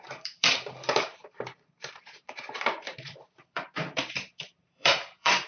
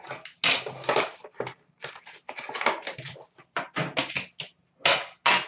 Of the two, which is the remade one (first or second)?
first